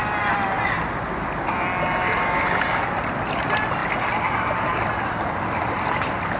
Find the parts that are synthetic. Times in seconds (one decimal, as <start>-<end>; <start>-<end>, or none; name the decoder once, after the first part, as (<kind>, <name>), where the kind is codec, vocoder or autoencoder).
none

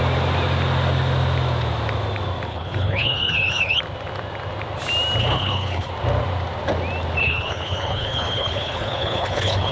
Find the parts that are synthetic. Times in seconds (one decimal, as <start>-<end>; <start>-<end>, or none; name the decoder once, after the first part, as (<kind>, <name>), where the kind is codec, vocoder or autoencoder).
2.5-3.8 (codec, HILCodec); 5.2-5.9; 7.2-9.7

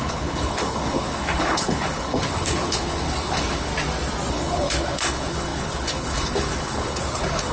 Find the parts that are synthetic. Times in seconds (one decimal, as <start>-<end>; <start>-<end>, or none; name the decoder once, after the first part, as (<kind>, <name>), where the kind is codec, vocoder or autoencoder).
0.0-3.7 (codec, HILCodec); 4.3-7.5

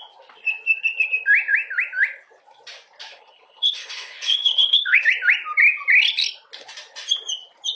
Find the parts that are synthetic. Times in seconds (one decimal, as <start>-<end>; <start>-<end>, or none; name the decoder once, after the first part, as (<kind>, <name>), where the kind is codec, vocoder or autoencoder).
3.1-5.0 (codec, HILCodec)

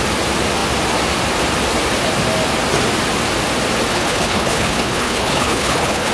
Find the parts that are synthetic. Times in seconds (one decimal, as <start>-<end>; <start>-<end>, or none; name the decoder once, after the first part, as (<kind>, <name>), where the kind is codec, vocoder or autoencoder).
3.9-6.1 (codec, HILCodec)

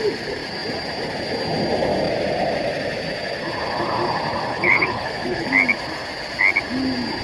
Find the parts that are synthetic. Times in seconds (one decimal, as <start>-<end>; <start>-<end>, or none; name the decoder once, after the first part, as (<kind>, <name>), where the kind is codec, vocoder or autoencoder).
4.5-5.5 (codec, HILCodec)